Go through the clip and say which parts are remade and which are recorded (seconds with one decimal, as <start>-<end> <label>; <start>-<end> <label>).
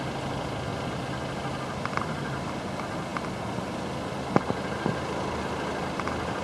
0.0-6.4 recorded